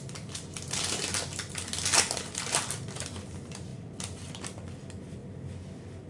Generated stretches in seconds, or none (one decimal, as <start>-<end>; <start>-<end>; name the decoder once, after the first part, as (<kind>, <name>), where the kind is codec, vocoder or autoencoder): none